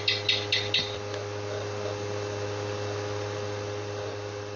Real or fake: real